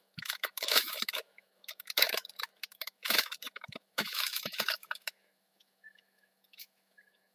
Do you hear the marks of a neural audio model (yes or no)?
yes